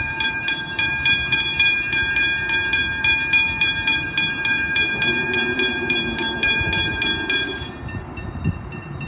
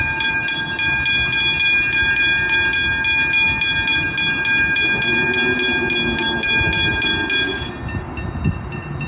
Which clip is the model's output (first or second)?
first